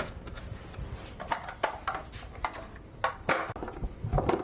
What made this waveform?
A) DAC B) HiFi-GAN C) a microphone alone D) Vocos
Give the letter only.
C